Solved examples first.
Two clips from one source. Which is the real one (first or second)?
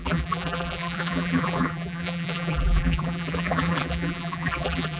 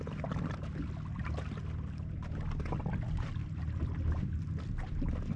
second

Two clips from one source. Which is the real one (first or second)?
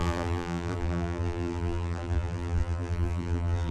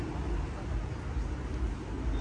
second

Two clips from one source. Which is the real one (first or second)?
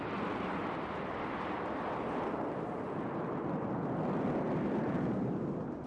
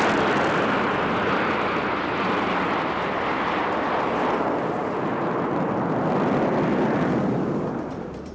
second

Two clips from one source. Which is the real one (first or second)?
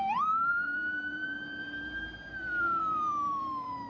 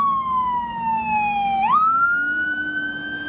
second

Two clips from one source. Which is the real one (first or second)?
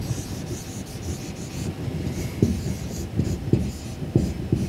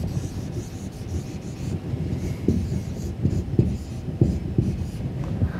first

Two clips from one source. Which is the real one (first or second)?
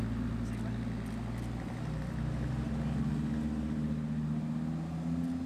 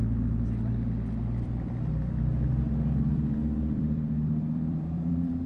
first